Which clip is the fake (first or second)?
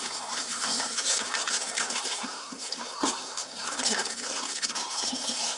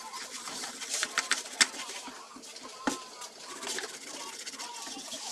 first